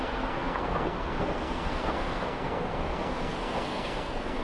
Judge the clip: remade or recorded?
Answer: remade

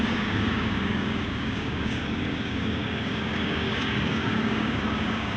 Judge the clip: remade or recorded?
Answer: remade